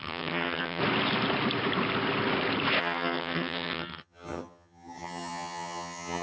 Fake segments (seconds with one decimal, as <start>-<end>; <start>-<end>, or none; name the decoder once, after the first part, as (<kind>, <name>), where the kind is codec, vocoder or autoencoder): 0.0-0.8 (vocoder, HiFi-GAN); 2.8-6.2